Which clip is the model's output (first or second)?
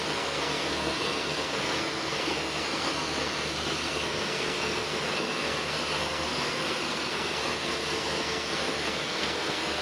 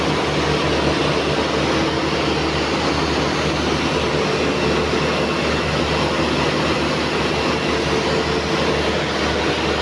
first